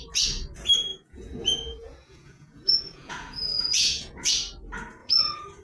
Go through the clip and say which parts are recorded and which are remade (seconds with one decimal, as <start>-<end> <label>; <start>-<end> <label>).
0.0-0.9 recorded; 0.9-4.3 remade; 4.3-5.0 recorded; 5.0-5.6 remade